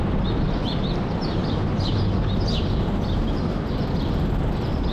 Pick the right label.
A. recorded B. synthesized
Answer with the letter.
A